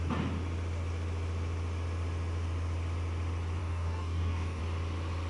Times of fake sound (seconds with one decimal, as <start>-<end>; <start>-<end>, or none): 3.6-4.6